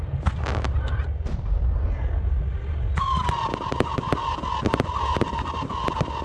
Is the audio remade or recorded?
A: recorded